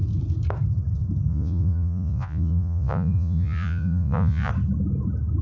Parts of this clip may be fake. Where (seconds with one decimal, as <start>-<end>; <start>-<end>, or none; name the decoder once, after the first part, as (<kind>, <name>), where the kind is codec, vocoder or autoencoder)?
1.3-4.5 (vocoder, Vocos)